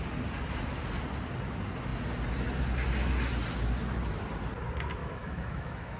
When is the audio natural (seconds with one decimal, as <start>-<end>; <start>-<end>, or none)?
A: 0.0-5.0